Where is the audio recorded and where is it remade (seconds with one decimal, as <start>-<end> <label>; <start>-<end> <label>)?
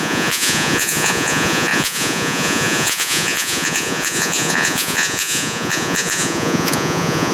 0.0-7.3 remade